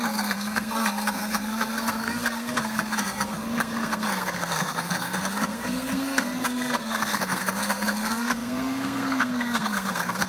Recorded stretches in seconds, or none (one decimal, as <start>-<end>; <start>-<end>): none